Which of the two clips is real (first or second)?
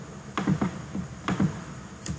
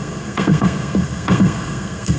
first